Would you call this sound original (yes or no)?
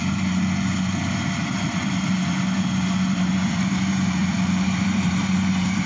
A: no